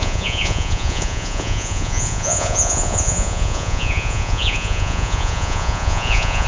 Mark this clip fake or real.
fake